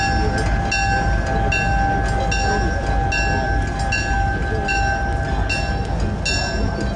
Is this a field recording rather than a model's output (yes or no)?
yes